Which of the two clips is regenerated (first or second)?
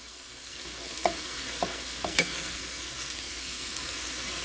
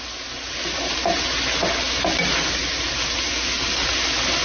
first